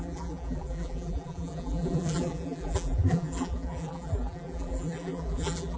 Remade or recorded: remade